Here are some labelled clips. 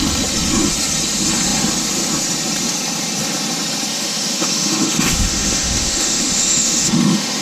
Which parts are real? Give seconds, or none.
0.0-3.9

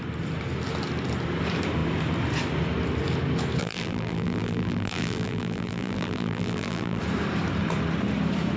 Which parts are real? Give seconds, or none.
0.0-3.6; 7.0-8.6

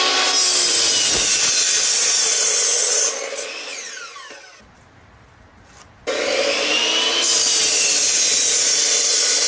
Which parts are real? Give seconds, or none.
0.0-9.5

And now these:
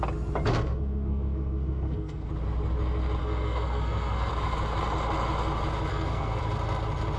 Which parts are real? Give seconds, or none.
0.0-0.5; 2.3-3.2; 4.3-5.9; 6.4-7.2

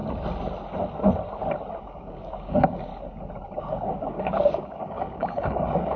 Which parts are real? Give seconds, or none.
0.0-1.8; 2.9-3.6

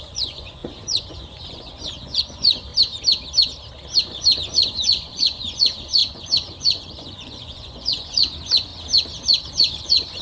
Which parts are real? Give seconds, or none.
2.7-4.0; 8.7-9.5

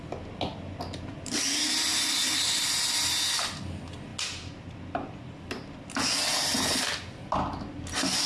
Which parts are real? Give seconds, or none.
0.0-8.3

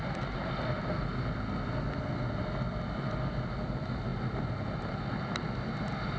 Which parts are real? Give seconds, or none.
0.0-6.2